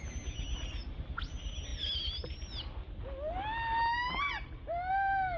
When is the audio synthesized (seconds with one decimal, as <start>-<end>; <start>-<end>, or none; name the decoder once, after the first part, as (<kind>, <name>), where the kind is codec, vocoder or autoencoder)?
none